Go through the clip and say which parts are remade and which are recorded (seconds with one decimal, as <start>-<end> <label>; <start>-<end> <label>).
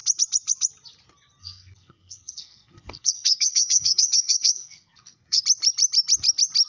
0.0-1.4 recorded; 1.4-5.4 remade; 5.4-6.7 recorded